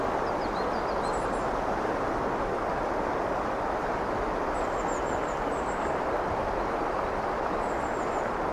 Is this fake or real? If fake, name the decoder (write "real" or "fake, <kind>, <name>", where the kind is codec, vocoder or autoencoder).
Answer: real